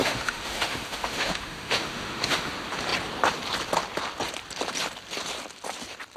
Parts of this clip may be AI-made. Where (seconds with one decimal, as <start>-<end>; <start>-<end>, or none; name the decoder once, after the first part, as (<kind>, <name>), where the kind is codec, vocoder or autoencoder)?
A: 0.0-2.5 (autoencoder, DAC-VAE)